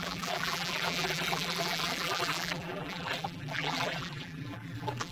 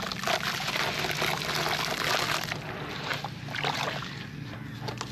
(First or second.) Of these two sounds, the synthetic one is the first